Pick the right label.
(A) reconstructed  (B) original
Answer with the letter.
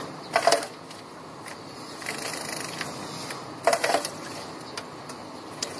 B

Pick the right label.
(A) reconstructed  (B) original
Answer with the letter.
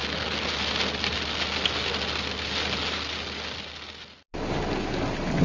B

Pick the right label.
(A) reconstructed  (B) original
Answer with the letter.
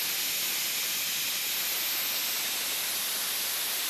B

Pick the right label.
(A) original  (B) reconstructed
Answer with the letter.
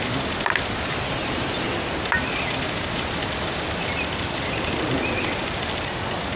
A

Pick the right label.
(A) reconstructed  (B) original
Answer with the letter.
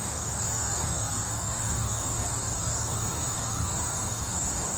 A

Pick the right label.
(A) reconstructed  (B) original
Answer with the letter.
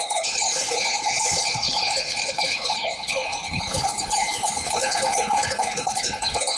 A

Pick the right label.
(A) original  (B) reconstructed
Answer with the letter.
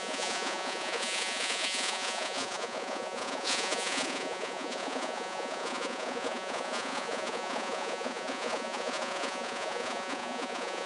B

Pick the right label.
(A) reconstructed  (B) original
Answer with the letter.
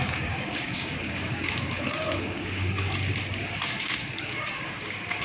A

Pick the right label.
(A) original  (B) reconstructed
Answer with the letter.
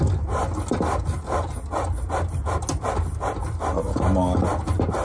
A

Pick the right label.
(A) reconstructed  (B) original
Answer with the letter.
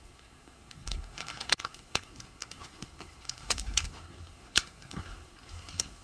A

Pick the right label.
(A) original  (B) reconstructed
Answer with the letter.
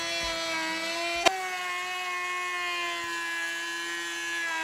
A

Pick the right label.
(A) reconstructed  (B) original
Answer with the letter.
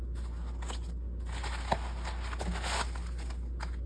B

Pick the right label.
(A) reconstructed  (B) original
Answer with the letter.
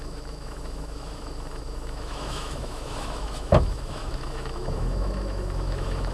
A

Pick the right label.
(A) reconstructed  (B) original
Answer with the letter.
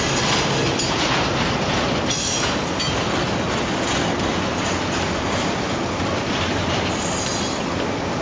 B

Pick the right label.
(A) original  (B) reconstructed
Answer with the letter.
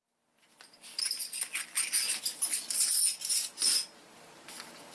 A